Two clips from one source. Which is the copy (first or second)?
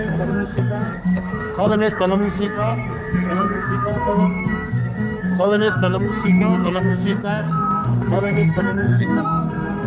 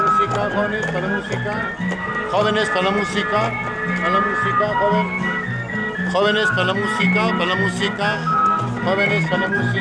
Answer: first